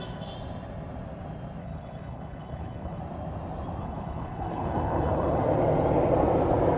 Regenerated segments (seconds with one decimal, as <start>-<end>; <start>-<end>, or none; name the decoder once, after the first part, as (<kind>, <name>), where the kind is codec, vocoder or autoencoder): 1.6-3.0 (codec, HILCodec); 3.8-5.4